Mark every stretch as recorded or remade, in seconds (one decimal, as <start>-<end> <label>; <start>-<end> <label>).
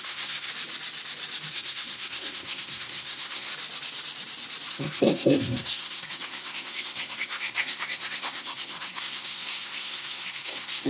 0.0-0.5 remade; 0.5-1.5 recorded; 1.5-3.5 remade; 3.5-4.7 recorded; 4.7-10.9 remade